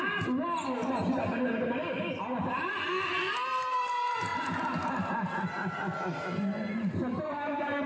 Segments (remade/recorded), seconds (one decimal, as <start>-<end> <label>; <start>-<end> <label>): 0.0-7.9 recorded

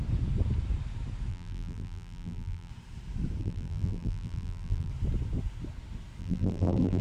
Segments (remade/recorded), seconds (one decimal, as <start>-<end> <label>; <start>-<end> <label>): 0.0-1.3 recorded; 1.3-2.7 remade; 2.7-3.4 recorded; 3.4-4.9 remade; 4.9-6.2 recorded; 6.2-7.0 remade

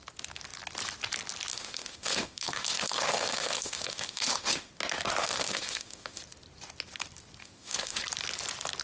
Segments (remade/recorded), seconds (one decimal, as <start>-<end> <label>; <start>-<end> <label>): 0.0-1.5 recorded; 1.5-4.7 remade; 4.7-5.2 recorded; 5.2-6.2 remade; 6.2-7.4 recorded; 7.4-8.0 remade; 8.0-8.8 recorded

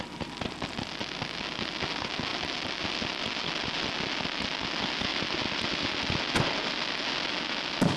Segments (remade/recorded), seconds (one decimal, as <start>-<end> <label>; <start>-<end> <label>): 0.0-8.0 recorded

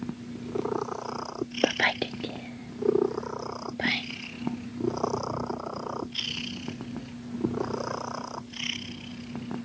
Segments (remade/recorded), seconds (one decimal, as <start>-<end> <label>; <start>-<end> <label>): 0.0-9.6 recorded

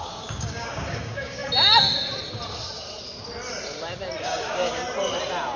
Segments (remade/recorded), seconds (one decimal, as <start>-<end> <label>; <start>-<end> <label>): 0.0-1.4 remade; 1.4-4.2 recorded; 4.2-4.8 remade; 4.8-5.6 recorded

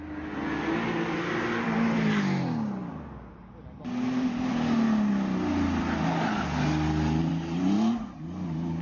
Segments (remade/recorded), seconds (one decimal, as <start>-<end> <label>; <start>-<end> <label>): 0.0-8.8 recorded